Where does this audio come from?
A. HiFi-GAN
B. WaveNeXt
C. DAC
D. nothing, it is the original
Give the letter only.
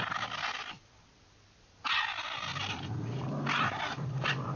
D